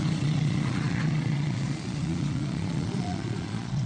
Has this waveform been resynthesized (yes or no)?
yes